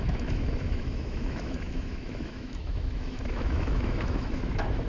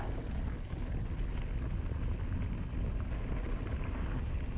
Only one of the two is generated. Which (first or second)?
first